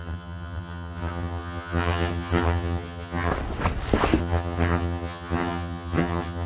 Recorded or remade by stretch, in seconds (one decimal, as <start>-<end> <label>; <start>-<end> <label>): 0.0-3.3 remade; 3.3-4.2 recorded; 4.2-6.5 remade